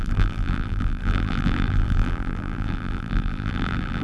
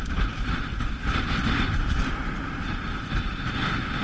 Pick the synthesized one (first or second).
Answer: first